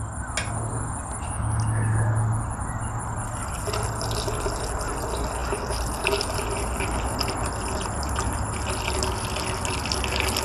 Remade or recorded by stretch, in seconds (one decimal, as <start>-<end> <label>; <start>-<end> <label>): 0.0-10.4 recorded